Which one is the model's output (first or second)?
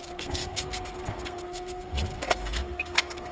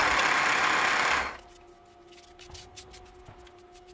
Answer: first